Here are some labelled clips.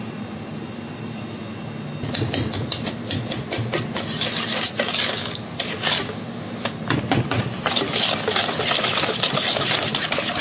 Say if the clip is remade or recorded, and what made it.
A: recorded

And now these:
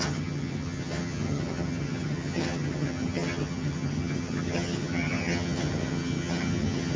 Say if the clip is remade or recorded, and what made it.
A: remade, vocoder, HiFi-GAN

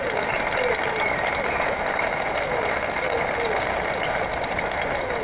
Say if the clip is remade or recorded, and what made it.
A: recorded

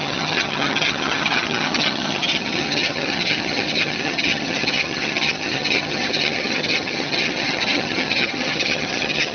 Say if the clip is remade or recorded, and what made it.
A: remade, vocoder, HiFi-GAN